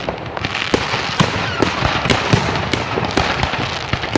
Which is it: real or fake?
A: real